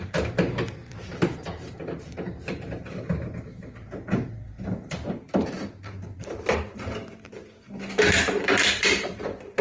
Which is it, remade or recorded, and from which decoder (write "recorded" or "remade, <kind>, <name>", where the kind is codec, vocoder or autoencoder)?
remade, vocoder, BigVGAN v2